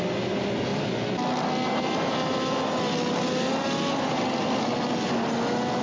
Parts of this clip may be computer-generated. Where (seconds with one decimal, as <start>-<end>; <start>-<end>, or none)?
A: none